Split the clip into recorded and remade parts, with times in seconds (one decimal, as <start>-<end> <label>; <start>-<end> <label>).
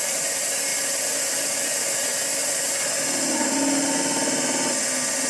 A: 0.0-0.7 remade; 0.7-1.3 recorded; 1.3-2.1 remade; 2.1-5.3 recorded